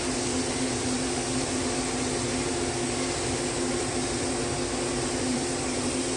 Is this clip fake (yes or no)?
yes